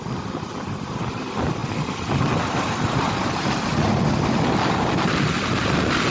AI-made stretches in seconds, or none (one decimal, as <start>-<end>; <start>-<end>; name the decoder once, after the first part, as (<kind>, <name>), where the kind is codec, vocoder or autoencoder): none